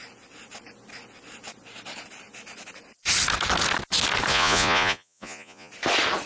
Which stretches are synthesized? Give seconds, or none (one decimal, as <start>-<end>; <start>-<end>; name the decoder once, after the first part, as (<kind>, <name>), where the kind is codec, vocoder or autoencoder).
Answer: 4.3-5.7 (vocoder, Vocos)